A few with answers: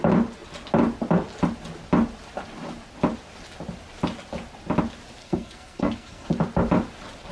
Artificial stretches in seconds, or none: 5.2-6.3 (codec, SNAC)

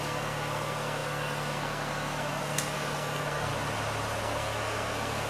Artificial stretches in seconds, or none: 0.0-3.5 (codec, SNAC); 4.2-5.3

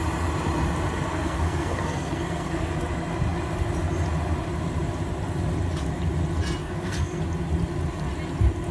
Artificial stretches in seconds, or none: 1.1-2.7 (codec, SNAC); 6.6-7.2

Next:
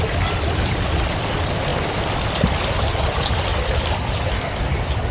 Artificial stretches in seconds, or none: none

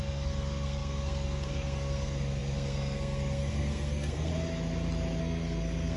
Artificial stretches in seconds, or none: 0.0-4.3 (codec, SNAC); 5.2-6.0